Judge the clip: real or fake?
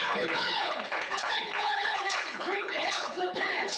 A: fake